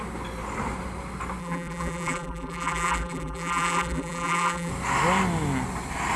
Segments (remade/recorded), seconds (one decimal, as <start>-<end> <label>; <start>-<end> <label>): 0.0-1.4 recorded; 1.4-4.7 remade; 4.7-6.2 recorded